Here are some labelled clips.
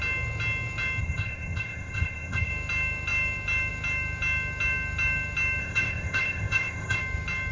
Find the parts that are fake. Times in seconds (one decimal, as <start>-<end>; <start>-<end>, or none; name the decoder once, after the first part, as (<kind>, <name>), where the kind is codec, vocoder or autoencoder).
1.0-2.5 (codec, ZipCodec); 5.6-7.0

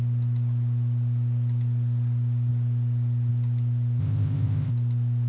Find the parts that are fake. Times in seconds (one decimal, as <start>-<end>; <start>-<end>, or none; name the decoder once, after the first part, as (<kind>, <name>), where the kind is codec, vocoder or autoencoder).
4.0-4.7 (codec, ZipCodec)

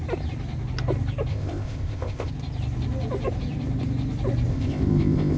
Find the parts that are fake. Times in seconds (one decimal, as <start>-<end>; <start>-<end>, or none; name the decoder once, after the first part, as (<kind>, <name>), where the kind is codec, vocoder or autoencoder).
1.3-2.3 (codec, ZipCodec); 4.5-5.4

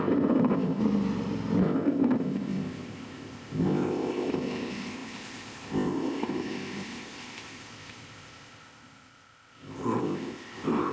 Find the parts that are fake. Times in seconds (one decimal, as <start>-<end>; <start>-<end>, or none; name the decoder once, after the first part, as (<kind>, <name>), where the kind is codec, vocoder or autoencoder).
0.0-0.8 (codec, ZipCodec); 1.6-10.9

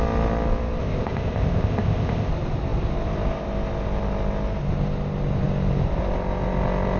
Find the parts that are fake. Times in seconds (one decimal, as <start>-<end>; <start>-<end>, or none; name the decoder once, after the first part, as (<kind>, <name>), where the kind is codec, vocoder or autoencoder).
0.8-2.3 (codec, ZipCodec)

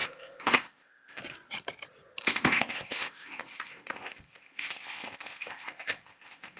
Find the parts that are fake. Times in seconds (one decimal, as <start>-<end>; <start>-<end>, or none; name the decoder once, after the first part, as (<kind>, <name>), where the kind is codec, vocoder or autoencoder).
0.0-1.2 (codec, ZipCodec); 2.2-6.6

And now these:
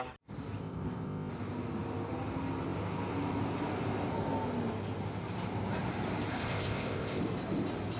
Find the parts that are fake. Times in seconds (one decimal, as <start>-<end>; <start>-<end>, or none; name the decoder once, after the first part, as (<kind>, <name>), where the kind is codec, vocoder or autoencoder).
0.6-1.3 (codec, ZipCodec); 6.3-7.2

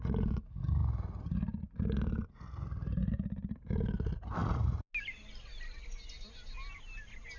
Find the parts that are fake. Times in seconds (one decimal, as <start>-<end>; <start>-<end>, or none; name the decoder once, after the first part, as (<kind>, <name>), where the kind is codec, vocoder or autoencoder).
none